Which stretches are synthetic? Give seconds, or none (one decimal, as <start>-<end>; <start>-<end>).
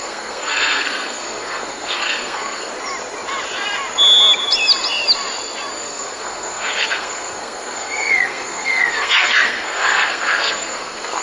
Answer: 0.0-2.7; 5.7-11.2